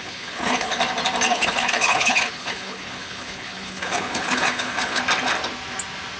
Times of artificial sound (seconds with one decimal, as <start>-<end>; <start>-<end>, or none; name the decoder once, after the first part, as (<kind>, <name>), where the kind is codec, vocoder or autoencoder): 0.0-0.8 (codec, HILCodec); 1.3-5.0